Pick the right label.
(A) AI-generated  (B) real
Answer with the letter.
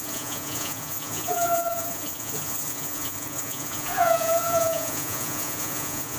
A